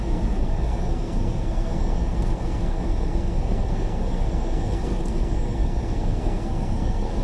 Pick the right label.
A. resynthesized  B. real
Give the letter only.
A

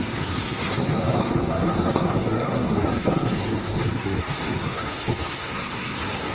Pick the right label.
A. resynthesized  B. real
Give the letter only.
A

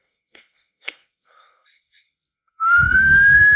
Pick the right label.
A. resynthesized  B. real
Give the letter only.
A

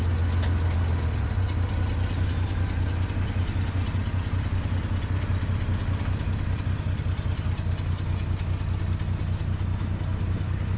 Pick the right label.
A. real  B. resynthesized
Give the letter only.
A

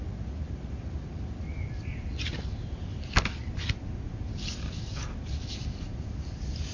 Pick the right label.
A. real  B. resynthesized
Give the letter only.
A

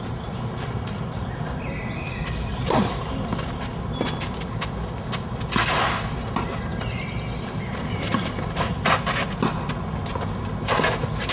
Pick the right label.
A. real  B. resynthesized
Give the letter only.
A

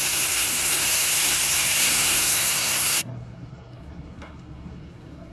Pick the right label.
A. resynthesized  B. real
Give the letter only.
A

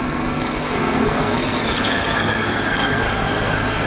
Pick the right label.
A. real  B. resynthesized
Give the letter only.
B